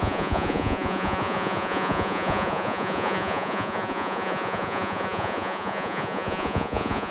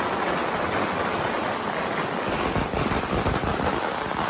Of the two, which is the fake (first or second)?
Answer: first